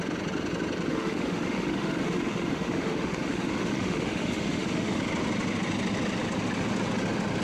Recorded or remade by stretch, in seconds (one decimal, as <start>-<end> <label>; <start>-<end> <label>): 0.0-0.9 recorded; 0.9-5.0 remade; 5.0-7.4 recorded